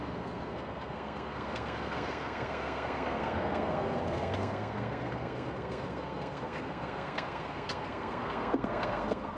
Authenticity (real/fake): fake